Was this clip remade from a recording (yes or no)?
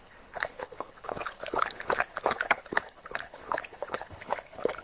yes